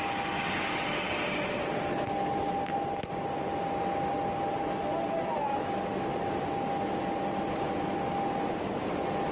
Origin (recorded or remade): recorded